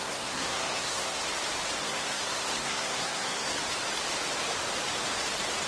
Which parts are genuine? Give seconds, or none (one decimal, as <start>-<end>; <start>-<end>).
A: 1.2-1.8; 3.5-5.7